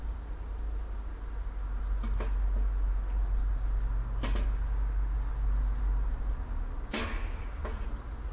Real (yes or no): yes